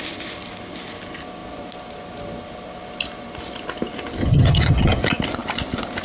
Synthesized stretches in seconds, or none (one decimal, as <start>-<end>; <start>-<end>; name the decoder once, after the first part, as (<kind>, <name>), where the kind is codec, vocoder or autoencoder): 4.2-5.0 (vocoder, HiFi-GAN)